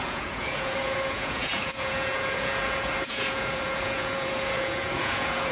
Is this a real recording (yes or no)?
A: no